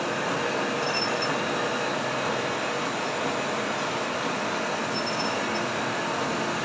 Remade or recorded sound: recorded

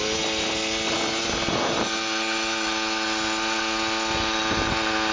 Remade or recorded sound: recorded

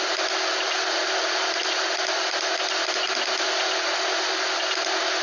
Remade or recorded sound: recorded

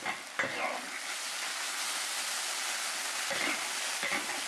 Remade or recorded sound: recorded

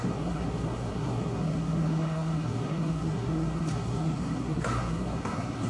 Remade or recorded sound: remade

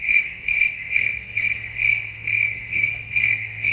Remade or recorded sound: remade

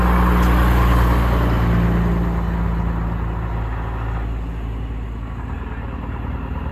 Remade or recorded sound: recorded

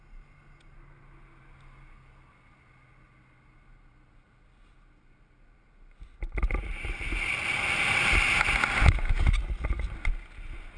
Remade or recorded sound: recorded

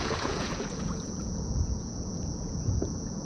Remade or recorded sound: remade